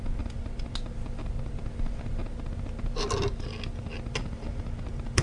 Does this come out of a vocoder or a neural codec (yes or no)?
no